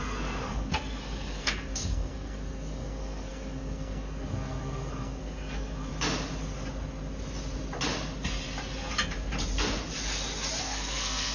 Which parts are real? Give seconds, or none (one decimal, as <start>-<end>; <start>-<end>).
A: 5.9-10.6